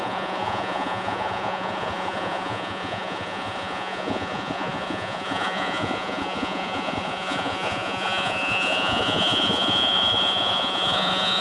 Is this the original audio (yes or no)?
no